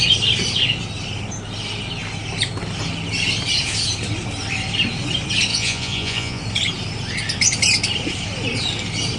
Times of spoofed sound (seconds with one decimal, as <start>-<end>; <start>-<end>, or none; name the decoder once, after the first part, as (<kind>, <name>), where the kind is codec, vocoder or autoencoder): 5.5-6.4 (vocoder, Vocos)